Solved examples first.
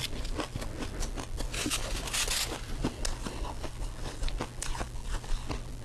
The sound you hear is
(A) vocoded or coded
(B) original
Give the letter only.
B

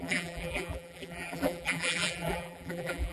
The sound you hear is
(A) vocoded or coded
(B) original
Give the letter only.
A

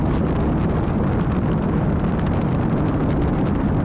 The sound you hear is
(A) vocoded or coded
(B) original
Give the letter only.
B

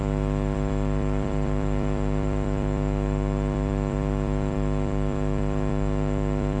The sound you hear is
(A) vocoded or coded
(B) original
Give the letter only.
A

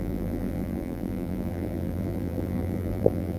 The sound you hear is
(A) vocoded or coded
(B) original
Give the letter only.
A